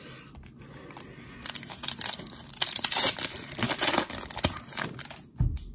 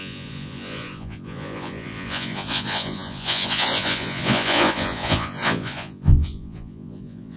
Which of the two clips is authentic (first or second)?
first